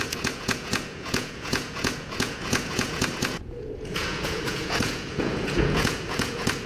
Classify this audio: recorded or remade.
remade